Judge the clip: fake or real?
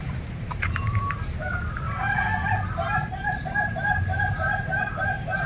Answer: fake